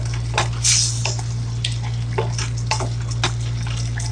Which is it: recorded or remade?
recorded